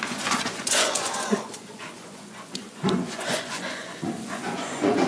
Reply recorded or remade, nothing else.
remade